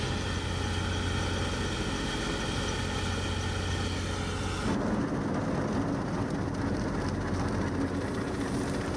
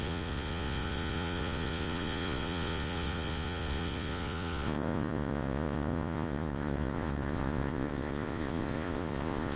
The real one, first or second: first